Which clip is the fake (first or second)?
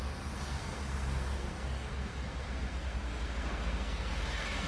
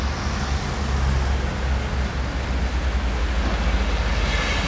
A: first